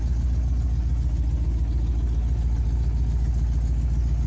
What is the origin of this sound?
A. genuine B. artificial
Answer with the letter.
A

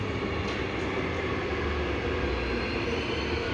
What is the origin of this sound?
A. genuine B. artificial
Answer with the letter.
A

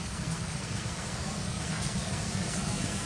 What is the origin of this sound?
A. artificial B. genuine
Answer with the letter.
A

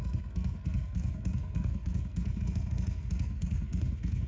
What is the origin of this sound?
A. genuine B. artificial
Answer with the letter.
B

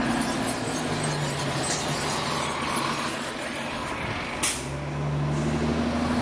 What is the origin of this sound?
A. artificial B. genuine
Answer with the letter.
B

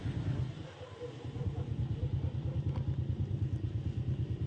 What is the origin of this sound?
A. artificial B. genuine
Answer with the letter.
B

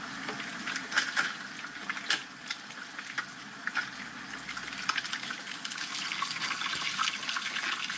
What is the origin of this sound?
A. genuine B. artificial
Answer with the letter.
A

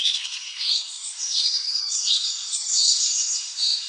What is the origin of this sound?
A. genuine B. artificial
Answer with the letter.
B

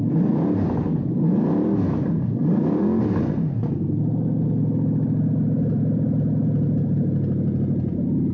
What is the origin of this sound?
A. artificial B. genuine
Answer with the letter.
B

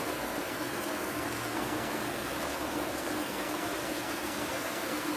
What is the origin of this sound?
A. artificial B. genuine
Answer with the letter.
A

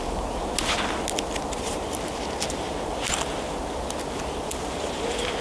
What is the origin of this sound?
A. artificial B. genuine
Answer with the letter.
B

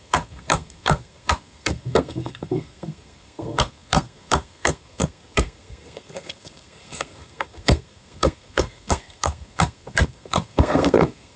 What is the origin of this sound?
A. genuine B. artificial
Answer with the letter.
B